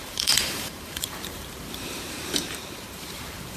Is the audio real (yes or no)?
no